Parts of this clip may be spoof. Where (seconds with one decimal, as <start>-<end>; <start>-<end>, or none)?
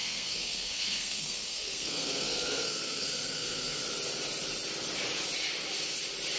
0.0-3.8